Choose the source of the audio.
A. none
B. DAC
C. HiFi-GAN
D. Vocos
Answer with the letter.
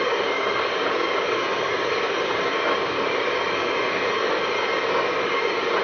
B